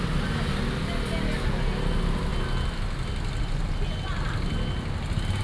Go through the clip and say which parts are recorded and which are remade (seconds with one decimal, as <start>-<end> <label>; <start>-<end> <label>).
0.0-5.4 recorded